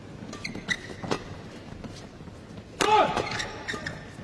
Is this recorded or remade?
recorded